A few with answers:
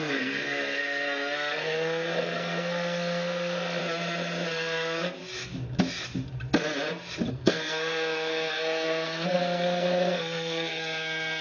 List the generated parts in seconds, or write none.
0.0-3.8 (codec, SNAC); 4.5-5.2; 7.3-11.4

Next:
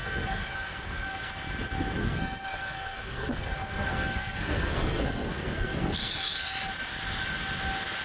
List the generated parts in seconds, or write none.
0.0-1.3 (codec, SNAC); 2.0-6.5

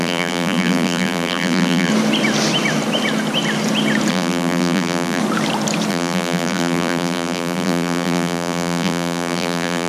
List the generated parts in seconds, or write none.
0.0-1.9 (vocoder, BigVGAN v2); 4.1-5.2; 5.9-9.9

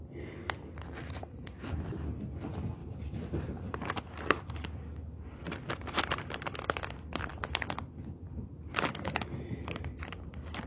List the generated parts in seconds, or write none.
2.8-3.9 (vocoder, BigVGAN v2)

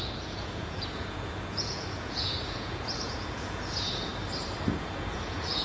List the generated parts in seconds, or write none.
0.0-4.1 (vocoder, Vocos); 4.8-5.6